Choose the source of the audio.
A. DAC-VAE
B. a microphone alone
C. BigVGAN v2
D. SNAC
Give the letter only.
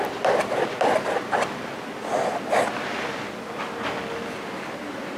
B